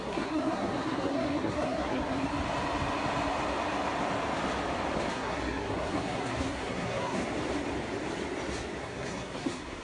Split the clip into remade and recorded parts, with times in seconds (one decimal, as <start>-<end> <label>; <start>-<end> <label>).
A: 0.0-2.3 remade; 2.3-5.1 recorded; 5.1-7.2 remade; 7.2-8.8 recorded; 8.8-9.8 remade

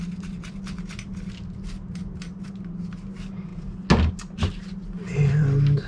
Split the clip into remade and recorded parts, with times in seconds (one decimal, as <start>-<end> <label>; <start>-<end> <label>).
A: 0.0-5.9 recorded

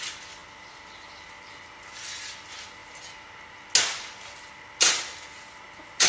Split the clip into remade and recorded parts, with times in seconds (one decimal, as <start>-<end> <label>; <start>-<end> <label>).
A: 0.0-6.1 recorded

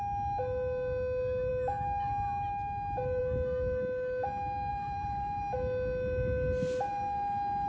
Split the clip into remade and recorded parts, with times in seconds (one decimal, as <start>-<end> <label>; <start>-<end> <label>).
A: 0.0-4.7 recorded; 4.7-5.4 remade; 5.4-7.7 recorded

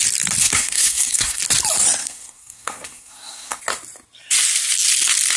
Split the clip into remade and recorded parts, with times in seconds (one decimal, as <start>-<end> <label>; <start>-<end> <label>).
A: 0.0-0.4 recorded; 0.4-1.4 remade; 1.4-2.0 recorded; 2.0-3.6 remade; 3.6-5.4 recorded

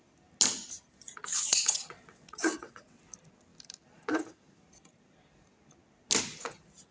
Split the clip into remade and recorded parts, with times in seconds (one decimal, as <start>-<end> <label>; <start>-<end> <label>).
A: 0.0-1.3 recorded; 1.3-3.0 remade; 3.0-6.9 recorded

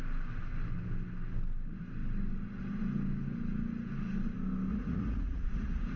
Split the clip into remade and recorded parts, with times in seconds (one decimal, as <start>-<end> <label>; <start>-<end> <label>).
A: 0.0-4.7 recorded; 4.7-6.0 remade

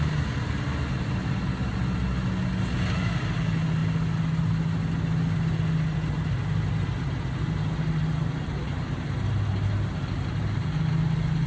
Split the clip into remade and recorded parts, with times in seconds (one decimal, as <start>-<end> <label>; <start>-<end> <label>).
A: 0.0-11.5 recorded